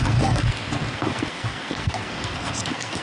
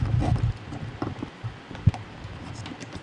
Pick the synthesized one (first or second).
first